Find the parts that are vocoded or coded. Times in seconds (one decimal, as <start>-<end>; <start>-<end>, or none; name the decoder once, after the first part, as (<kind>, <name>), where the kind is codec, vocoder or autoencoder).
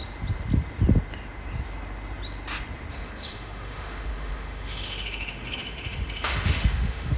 2.9-7.2 (autoencoder, DAC-VAE)